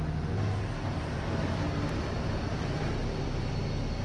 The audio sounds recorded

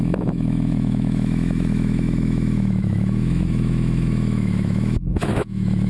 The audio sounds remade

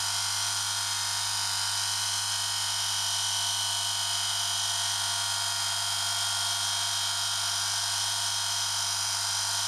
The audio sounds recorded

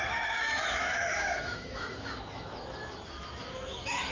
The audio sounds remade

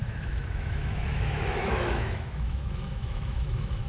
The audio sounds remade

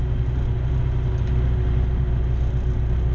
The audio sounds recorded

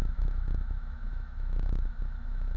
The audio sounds remade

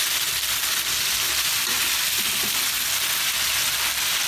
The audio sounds recorded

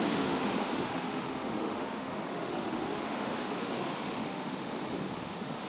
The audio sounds remade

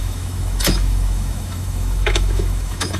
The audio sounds remade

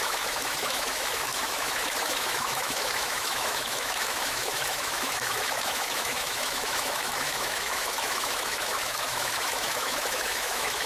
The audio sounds remade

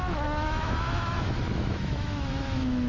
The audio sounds remade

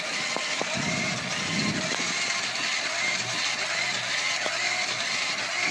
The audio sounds recorded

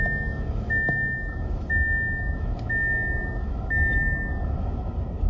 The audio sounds remade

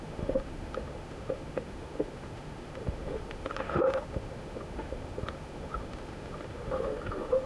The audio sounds remade